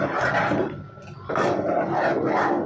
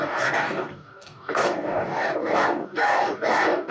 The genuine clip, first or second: first